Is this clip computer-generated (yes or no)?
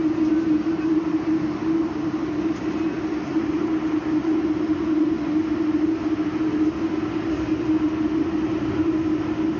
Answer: no